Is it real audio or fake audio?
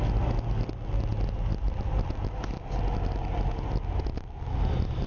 real